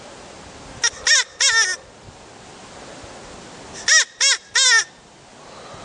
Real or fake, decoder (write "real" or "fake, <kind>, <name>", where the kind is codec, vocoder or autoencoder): real